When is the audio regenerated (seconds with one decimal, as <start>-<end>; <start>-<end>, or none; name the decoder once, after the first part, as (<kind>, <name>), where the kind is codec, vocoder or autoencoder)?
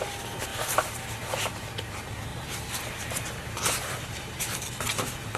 0.5-1.2 (vocoder, BigVGAN v2); 2.3-4.4